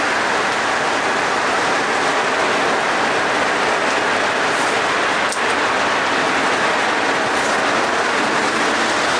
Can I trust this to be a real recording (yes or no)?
yes